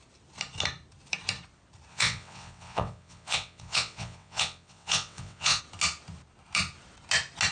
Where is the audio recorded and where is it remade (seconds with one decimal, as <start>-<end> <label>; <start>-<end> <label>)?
0.0-1.9 recorded; 1.9-5.6 remade; 5.6-7.5 recorded